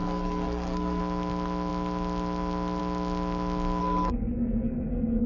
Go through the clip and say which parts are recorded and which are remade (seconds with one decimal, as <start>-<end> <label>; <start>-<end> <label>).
0.0-1.0 remade; 1.0-3.8 recorded; 3.8-5.3 remade